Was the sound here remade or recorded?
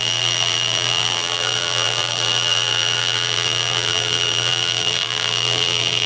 remade